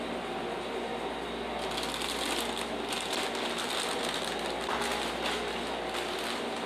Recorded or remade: recorded